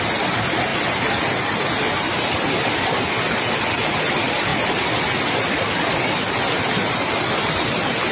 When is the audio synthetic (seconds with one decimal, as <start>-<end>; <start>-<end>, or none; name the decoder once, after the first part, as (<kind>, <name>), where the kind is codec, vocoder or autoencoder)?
none